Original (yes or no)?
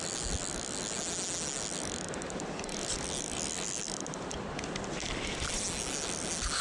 yes